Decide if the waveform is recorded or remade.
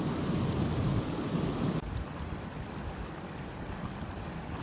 recorded